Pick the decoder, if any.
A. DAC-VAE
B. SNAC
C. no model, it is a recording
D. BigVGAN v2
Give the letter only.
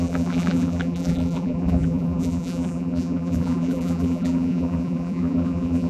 D